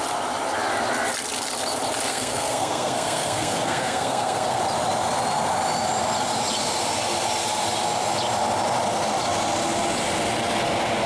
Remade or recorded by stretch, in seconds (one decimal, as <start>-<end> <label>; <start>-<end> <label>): 0.0-2.1 recorded; 2.1-4.6 remade; 4.6-11.1 recorded